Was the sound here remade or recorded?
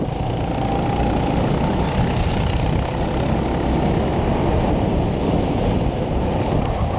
recorded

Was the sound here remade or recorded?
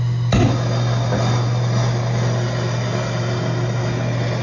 recorded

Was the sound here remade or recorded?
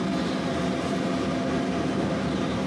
recorded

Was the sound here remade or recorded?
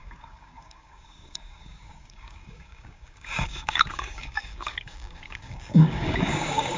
remade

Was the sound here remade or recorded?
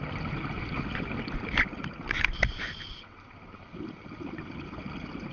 recorded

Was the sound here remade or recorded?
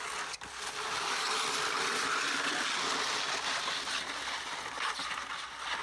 recorded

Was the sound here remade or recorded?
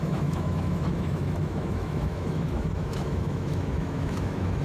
remade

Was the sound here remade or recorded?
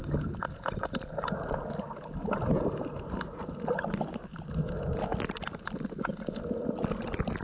recorded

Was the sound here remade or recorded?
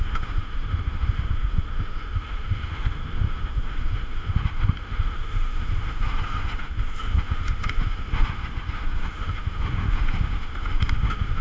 remade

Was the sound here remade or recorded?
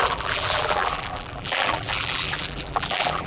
remade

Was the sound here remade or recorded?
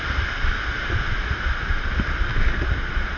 recorded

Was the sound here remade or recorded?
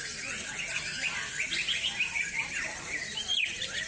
recorded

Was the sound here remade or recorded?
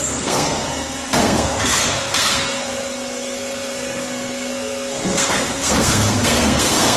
remade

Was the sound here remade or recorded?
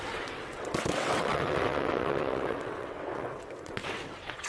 remade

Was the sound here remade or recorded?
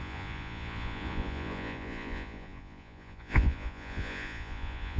remade